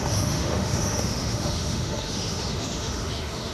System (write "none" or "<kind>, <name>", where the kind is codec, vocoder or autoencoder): autoencoder, DAC-VAE